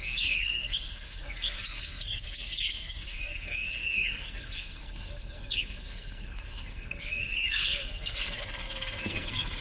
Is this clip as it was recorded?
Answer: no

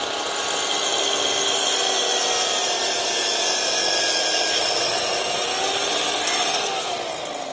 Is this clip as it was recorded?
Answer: yes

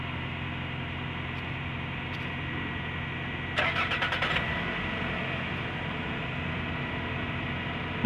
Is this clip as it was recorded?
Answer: yes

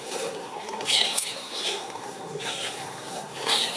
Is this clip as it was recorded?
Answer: no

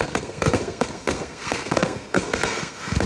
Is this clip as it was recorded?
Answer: no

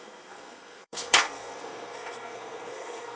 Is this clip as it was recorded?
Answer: no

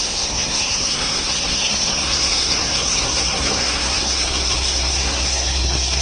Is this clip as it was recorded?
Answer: no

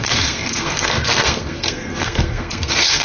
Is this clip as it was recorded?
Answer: no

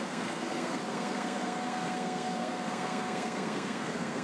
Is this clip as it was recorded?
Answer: no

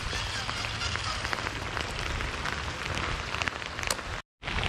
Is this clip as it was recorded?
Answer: yes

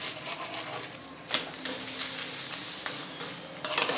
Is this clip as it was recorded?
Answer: yes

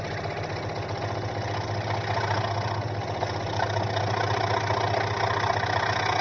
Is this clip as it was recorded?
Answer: yes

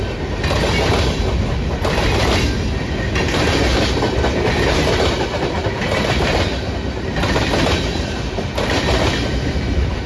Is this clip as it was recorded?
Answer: yes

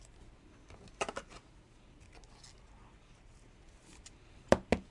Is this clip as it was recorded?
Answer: yes